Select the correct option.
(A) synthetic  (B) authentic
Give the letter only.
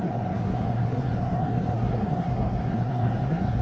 A